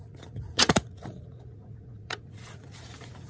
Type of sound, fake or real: fake